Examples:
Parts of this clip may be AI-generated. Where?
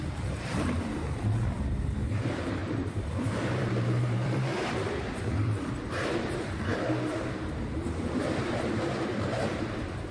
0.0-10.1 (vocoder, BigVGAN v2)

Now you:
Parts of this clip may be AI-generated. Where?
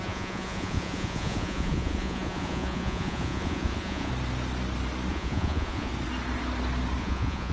0.0-4.1 (vocoder, Vocos); 5.1-5.9; 7.0-7.5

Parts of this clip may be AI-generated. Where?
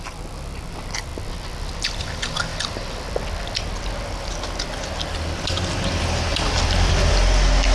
1.1-2.0 (vocoder, BigVGAN v2); 2.5-3.6; 6.3-7.1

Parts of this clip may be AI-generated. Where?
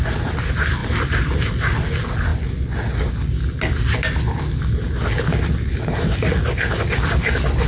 none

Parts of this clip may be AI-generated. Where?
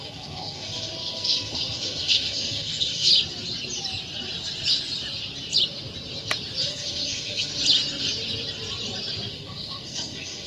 0.0-3.1 (codec, SNAC); 6.7-7.5; 9.3-10.5